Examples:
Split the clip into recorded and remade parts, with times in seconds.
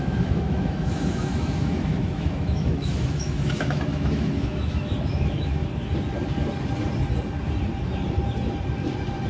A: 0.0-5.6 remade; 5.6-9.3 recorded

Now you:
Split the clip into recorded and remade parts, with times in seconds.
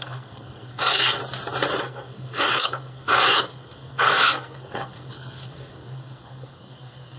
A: 0.0-1.2 remade; 1.2-1.8 recorded; 1.8-7.2 remade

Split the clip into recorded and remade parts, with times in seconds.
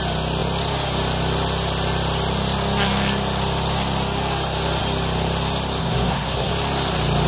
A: 0.0-5.8 recorded; 5.8-6.5 remade; 6.5-7.3 recorded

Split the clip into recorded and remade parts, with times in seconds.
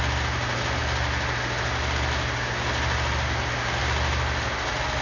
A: 0.0-5.0 recorded